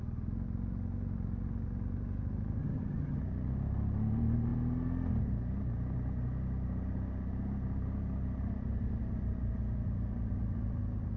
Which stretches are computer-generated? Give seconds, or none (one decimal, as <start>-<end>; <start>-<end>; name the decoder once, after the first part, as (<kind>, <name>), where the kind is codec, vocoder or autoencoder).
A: 2.6-3.2 (vocoder, HiFi-GAN)